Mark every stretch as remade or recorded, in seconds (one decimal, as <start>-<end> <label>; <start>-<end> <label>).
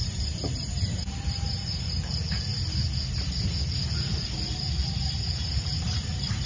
0.0-2.5 remade; 2.5-4.5 recorded; 4.5-6.5 remade